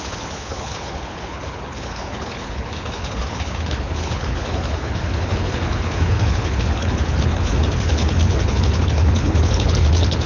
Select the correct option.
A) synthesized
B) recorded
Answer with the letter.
A